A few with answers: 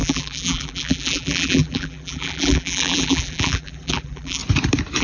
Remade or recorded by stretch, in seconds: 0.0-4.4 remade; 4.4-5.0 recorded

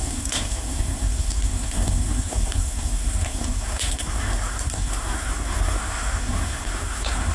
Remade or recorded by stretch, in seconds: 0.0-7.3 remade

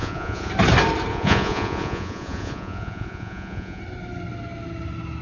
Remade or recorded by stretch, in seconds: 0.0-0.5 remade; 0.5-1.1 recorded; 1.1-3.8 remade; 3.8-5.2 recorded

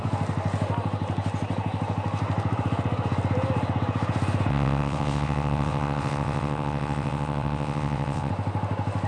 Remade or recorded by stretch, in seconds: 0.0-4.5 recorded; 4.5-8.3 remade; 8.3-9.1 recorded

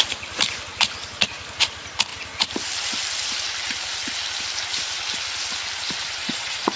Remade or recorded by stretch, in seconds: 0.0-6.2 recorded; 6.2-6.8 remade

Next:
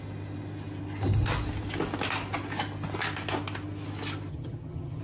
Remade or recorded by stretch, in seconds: 0.0-4.3 recorded; 4.3-5.0 remade

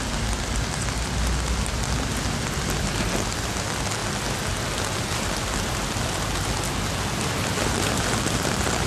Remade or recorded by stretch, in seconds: 0.0-8.9 recorded